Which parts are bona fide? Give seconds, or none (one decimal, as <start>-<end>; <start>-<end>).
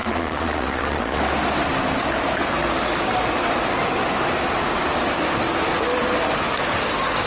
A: 1.2-7.3